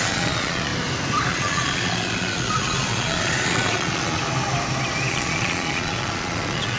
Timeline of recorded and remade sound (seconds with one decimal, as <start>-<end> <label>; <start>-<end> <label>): 0.0-0.7 remade; 0.7-1.3 recorded; 1.3-4.2 remade; 4.2-5.1 recorded; 5.1-6.8 remade